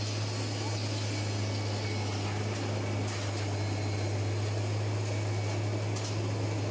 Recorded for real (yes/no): yes